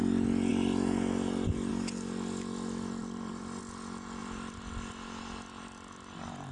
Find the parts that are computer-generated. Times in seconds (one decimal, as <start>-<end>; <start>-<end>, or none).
3.0-3.6; 4.2-4.9